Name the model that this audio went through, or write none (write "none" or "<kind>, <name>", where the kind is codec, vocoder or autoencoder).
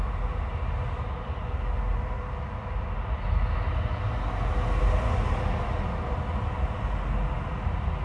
none